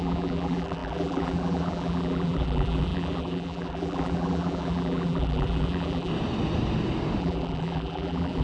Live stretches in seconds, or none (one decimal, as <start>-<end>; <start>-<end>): 6.1-7.2